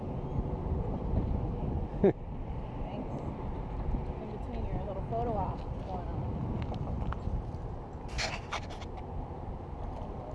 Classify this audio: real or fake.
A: real